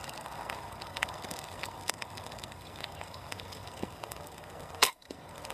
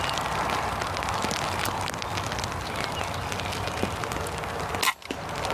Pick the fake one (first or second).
first